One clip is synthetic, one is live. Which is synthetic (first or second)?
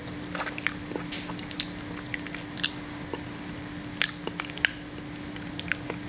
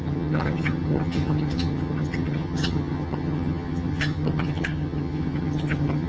second